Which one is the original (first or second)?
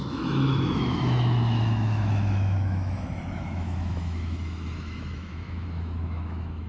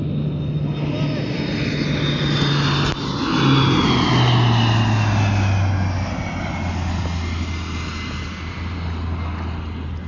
second